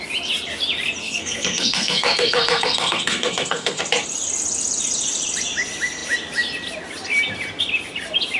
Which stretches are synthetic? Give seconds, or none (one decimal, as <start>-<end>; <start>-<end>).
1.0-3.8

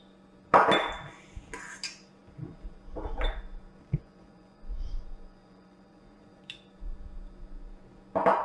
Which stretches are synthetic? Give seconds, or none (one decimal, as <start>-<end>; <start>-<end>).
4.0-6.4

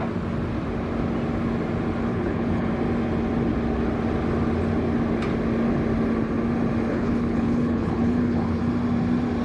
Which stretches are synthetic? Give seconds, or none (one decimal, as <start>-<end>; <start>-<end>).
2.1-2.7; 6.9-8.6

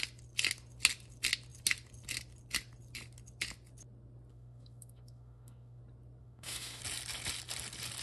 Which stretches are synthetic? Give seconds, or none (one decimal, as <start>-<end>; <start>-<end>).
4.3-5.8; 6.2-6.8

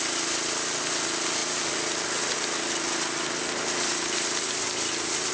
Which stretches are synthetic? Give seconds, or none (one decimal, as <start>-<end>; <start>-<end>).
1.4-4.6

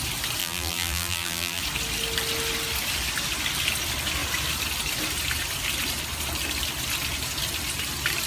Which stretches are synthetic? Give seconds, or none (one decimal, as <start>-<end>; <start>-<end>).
0.4-1.6